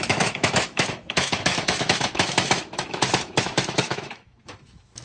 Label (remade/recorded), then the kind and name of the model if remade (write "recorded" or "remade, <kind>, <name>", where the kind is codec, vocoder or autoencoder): remade, autoencoder, DAC-VAE